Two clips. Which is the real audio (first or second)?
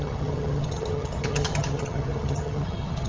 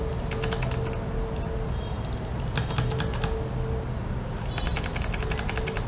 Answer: second